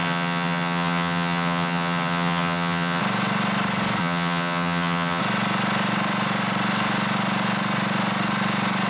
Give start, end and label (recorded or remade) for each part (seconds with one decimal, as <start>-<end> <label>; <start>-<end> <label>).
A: 0.0-3.0 remade; 3.0-4.0 recorded; 4.0-5.2 remade; 5.2-8.9 recorded